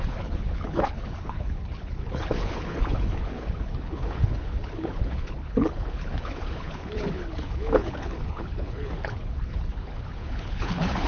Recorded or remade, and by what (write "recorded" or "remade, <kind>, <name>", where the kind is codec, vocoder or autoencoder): remade, codec, HILCodec